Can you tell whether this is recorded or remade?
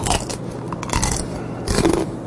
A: recorded